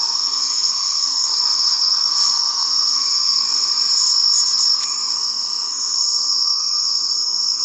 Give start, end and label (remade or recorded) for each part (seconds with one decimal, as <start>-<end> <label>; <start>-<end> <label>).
0.0-3.7 remade; 3.7-5.1 recorded; 5.1-7.6 remade